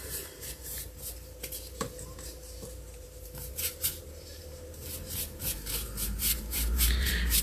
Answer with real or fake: fake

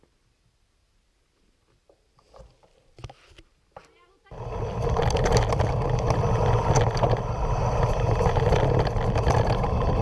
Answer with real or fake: real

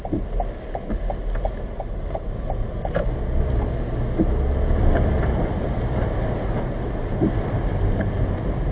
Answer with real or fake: real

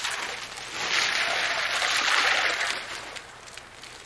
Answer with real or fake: real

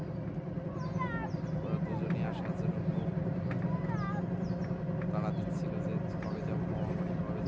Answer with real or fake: real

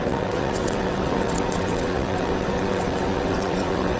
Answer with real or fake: fake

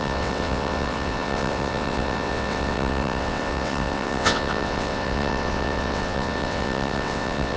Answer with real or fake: fake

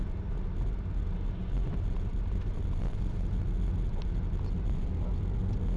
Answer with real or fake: real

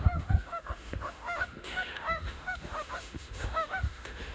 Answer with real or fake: fake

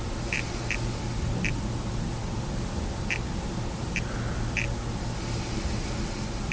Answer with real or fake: real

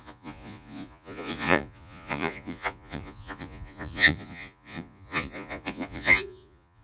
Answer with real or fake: fake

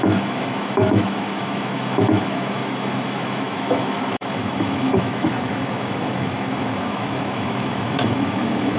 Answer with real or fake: fake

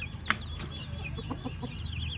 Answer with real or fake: real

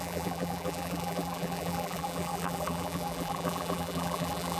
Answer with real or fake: fake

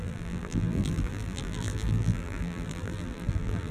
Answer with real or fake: fake